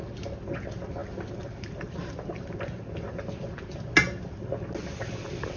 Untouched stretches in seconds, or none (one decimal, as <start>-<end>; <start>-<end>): 0.0-5.6